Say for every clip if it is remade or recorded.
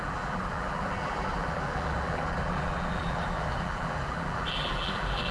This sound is remade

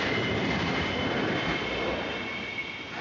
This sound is recorded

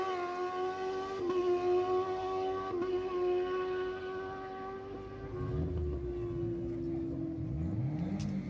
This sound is recorded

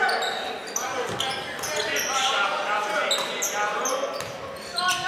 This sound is recorded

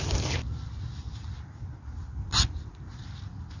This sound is recorded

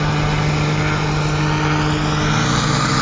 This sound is recorded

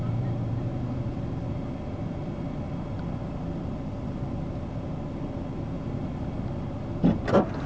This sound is remade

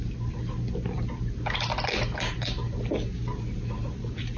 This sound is recorded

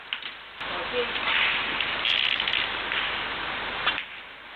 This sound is recorded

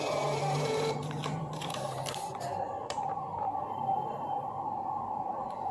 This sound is remade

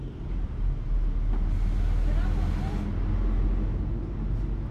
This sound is recorded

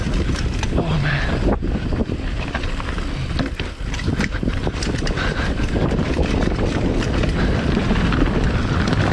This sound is remade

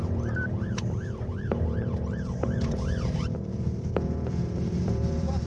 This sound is remade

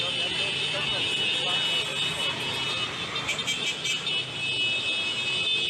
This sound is recorded